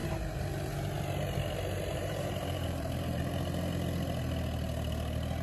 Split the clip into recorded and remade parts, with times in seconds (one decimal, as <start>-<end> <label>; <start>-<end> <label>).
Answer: 0.0-1.9 recorded; 1.9-3.2 remade; 3.2-5.4 recorded